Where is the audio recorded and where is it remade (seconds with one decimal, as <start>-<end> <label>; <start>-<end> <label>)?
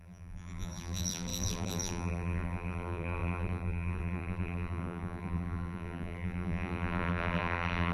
0.0-7.9 remade